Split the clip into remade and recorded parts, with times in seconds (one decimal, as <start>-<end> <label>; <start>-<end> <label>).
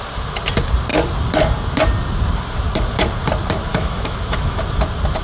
0.0-3.7 recorded; 3.7-4.6 remade; 4.6-5.2 recorded